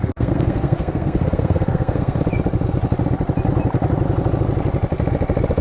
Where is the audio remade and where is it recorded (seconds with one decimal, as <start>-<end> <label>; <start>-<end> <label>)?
0.0-2.2 remade; 2.2-5.6 recorded